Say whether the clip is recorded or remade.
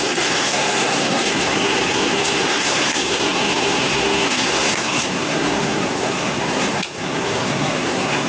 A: remade